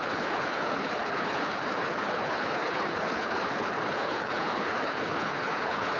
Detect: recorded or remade remade